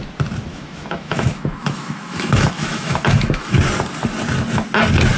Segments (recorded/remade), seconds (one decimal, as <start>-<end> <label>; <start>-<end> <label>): 0.0-0.5 recorded; 0.5-3.6 remade; 3.6-5.2 recorded